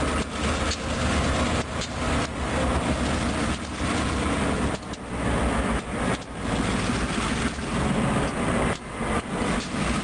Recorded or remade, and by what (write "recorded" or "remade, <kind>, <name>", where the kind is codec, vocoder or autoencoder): recorded